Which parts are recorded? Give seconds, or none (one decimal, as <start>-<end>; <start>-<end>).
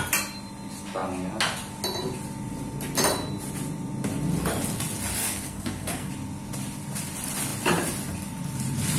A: 0.0-5.2; 6.1-9.0